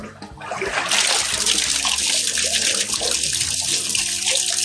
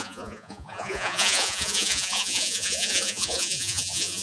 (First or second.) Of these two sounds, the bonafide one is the first